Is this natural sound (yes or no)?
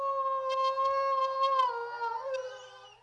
yes